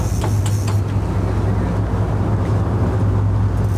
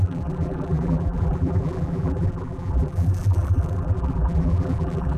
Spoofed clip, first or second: second